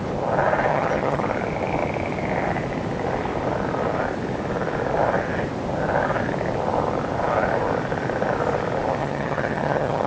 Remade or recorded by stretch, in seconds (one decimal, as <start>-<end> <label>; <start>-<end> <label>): 0.0-0.7 recorded; 0.7-1.2 remade; 1.2-9.0 recorded; 9.0-10.1 remade